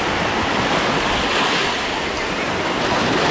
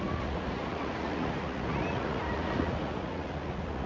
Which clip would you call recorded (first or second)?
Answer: first